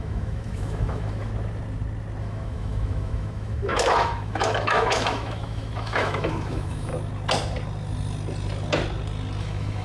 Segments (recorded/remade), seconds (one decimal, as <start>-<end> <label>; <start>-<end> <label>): 0.0-1.3 remade; 1.3-2.2 recorded; 2.2-6.9 remade; 6.9-9.4 recorded; 9.4-9.8 remade